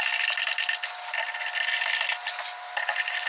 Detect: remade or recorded recorded